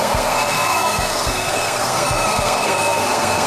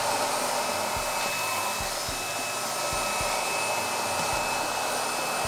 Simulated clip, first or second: first